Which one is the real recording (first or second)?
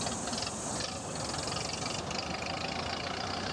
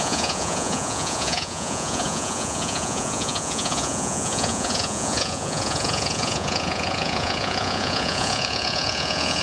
first